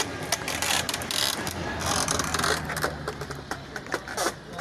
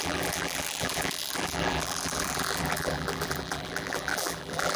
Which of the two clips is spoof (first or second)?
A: second